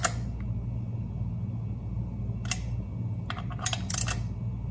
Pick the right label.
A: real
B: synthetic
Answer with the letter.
A